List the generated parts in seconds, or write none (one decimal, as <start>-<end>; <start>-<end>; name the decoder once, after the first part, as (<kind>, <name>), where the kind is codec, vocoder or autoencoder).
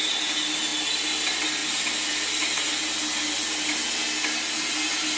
none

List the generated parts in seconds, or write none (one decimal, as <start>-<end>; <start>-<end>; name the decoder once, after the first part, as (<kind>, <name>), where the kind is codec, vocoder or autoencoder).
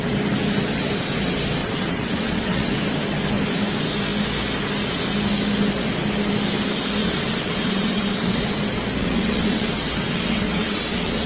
1.6-2.8 (vocoder, WaveNeXt); 7.0-8.5; 9.0-11.3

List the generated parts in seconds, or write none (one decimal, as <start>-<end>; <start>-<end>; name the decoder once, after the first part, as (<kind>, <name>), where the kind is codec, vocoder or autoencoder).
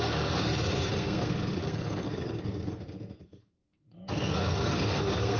0.0-5.4 (codec, SNAC)